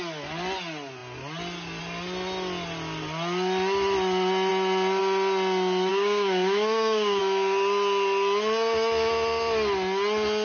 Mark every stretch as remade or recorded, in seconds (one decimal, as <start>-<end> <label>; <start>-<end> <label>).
0.0-5.9 recorded; 5.9-7.2 remade; 7.2-10.4 recorded